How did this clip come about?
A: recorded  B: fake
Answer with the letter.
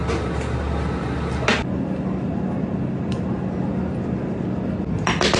A